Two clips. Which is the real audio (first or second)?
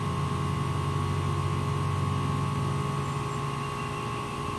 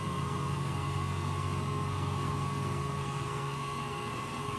first